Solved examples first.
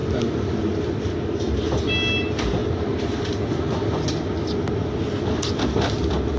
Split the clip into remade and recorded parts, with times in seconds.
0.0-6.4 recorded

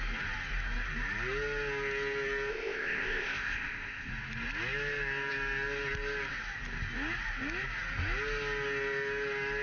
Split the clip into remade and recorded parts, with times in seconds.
0.0-2.5 recorded; 2.5-4.1 remade; 4.1-9.6 recorded

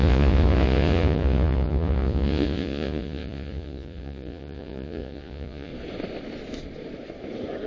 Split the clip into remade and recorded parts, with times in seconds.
0.0-5.7 remade; 5.7-7.7 recorded

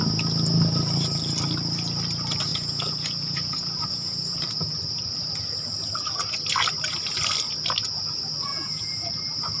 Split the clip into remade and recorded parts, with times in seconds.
0.0-2.5 recorded; 2.5-4.8 remade; 4.8-8.5 recorded; 8.5-9.1 remade; 9.1-9.6 recorded

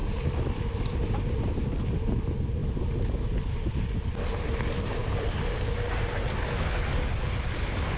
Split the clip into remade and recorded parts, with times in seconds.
0.0-8.0 recorded

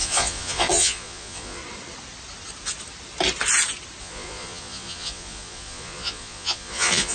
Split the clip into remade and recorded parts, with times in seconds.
0.0-1.6 remade; 1.6-4.0 recorded; 4.0-7.1 remade

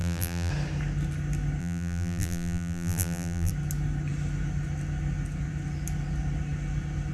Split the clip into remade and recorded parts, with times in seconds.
0.0-0.5 remade; 0.5-1.6 recorded; 1.6-3.5 remade; 3.5-7.1 recorded

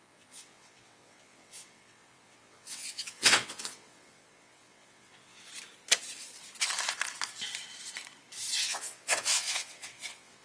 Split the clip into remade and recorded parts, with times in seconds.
0.0-5.5 remade; 5.5-8.6 recorded; 8.6-10.4 remade